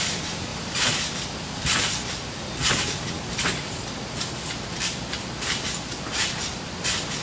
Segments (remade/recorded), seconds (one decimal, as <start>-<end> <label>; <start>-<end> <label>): 0.0-0.5 recorded; 0.5-1.1 remade; 1.1-7.2 recorded